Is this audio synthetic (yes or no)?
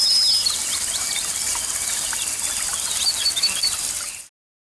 no